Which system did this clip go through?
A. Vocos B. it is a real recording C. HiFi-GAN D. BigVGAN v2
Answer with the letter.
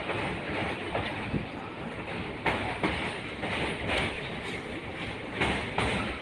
B